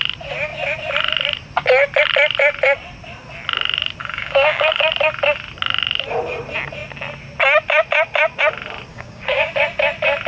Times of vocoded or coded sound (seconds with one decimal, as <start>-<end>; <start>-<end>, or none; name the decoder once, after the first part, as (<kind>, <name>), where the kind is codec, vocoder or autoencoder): 4.0-4.8 (codec, DAC); 8.9-9.5